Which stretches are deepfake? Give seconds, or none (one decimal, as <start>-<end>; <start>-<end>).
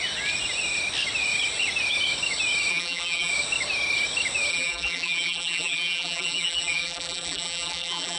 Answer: 2.7-3.3; 4.5-8.2